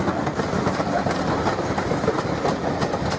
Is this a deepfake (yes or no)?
no